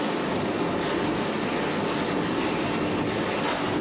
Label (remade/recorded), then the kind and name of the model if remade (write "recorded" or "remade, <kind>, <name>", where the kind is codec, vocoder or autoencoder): recorded